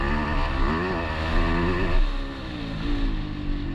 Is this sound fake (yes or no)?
no